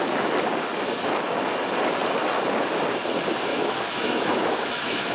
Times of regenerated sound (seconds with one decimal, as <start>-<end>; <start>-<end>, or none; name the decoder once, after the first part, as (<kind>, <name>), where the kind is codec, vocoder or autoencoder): 3.5-5.1 (autoencoder, DAC-VAE)